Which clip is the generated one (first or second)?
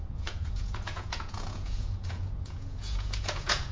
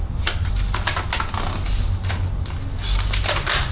first